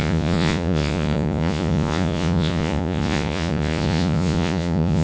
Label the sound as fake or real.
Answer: fake